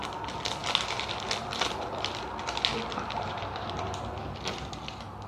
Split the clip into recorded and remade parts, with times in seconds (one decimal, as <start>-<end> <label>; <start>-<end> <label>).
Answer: 0.0-5.3 recorded